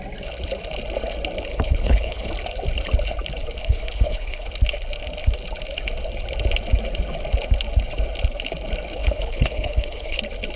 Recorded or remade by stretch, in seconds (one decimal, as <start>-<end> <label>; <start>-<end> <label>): 0.0-1.5 recorded; 1.5-2.3 remade; 2.3-3.6 recorded; 3.6-4.5 remade; 4.5-9.0 recorded; 9.0-10.2 remade; 10.2-10.6 recorded